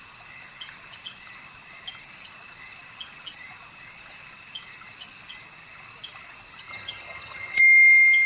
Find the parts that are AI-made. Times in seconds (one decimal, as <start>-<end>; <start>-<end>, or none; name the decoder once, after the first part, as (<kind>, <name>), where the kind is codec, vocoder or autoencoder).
6.7-7.6 (vocoder, HiFi-GAN)